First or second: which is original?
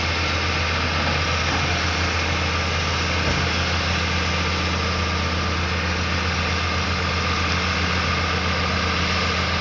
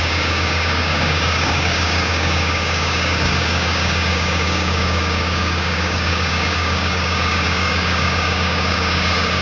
first